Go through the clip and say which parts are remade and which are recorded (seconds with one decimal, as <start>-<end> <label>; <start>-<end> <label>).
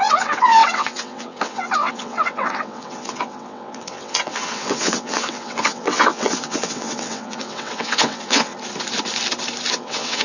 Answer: 0.0-8.5 remade; 8.5-9.7 recorded; 9.7-10.2 remade